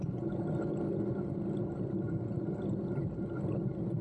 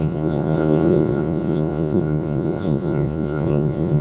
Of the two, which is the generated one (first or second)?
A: second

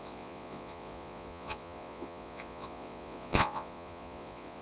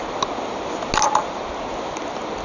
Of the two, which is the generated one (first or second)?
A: first